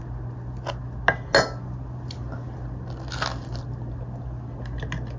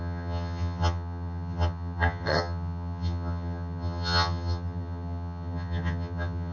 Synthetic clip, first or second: second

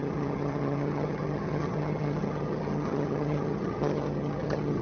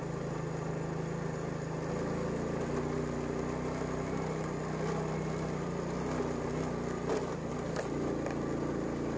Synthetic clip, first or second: first